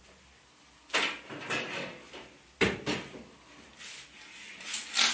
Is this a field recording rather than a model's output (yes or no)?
yes